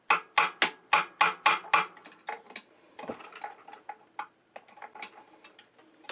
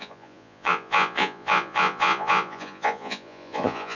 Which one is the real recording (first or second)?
first